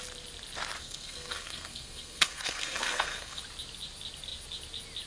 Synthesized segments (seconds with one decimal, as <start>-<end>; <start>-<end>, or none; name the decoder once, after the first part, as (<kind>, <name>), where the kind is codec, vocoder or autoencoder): 0.8-3.4 (codec, SNAC)